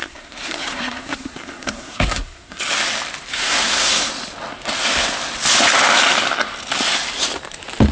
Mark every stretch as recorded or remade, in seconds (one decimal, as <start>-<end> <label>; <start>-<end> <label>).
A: 0.0-2.6 remade; 2.6-3.3 recorded; 3.3-4.1 remade; 4.1-7.9 recorded